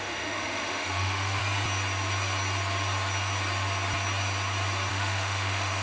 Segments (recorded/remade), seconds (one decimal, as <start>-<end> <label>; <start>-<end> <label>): 0.0-1.4 remade; 1.4-4.9 recorded; 4.9-5.8 remade